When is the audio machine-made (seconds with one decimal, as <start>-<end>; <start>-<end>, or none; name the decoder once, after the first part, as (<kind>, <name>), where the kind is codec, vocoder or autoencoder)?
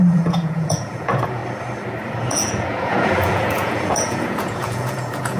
0.0-1.4 (vocoder, Vocos); 2.2-5.4